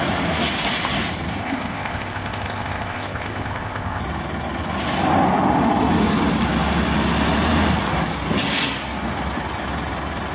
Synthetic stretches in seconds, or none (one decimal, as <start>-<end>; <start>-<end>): 1.4-4.0